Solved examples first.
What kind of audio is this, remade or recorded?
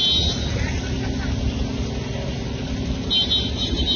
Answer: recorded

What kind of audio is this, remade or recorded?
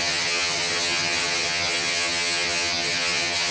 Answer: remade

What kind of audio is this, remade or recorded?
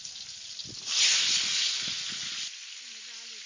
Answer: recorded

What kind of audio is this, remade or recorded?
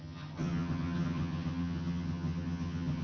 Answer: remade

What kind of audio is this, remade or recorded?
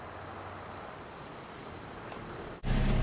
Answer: recorded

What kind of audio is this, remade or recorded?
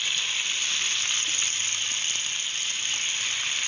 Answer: recorded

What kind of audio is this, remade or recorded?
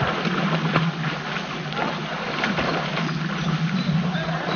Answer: recorded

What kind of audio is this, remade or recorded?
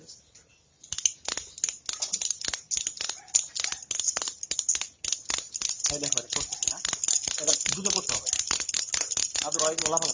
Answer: recorded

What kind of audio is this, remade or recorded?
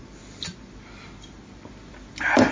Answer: recorded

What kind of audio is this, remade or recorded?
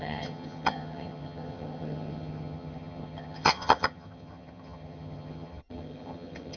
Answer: remade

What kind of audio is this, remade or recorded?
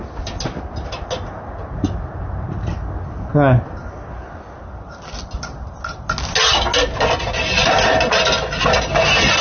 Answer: recorded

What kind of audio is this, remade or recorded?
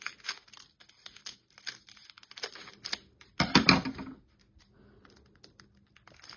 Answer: recorded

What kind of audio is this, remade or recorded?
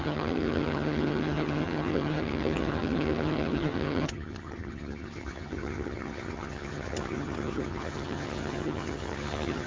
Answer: remade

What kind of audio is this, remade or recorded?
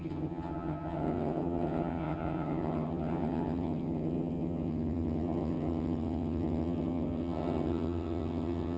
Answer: remade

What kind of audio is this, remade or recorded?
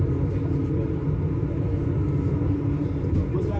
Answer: recorded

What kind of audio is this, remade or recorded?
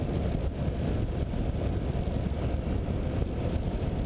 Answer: recorded